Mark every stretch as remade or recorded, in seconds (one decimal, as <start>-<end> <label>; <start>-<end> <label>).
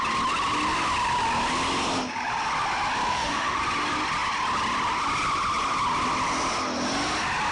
0.0-3.1 recorded; 3.1-3.6 remade; 3.6-7.5 recorded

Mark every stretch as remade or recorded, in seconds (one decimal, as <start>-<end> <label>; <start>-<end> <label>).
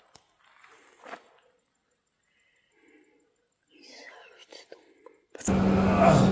0.0-6.3 recorded